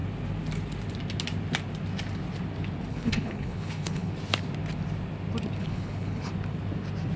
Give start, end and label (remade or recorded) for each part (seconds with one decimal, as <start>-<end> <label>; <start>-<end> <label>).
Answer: 0.0-2.9 recorded; 2.9-4.1 remade; 4.1-5.6 recorded; 5.6-6.3 remade; 6.3-7.2 recorded